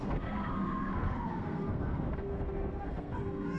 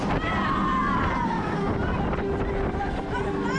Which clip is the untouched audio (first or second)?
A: second